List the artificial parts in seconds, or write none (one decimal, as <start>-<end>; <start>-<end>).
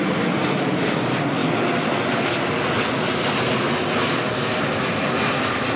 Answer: none